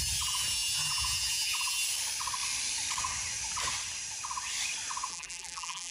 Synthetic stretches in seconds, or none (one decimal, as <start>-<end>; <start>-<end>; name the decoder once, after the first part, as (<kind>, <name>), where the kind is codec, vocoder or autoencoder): 5.1-5.9 (vocoder, BigVGAN v2)